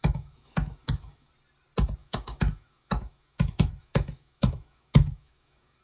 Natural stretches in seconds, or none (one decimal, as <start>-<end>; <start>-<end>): 1.3-2.0